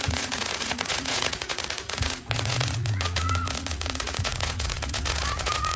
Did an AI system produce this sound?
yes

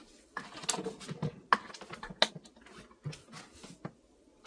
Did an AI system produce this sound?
no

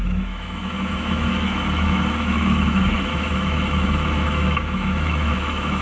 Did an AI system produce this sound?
yes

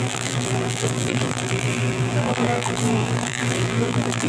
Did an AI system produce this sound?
yes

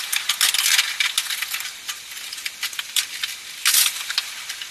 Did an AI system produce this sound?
no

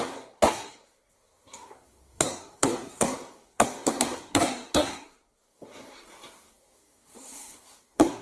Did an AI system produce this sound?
yes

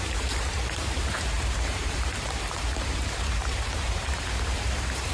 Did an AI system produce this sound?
yes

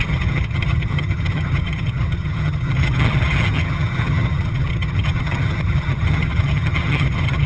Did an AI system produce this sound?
yes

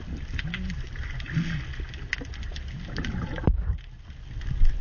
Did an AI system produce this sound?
no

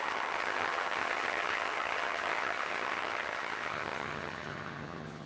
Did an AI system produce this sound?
yes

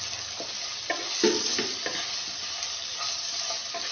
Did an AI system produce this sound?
no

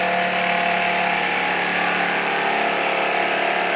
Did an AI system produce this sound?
no